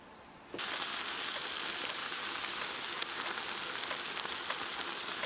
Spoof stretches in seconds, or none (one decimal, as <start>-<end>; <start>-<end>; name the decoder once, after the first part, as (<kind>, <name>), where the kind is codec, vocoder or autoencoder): none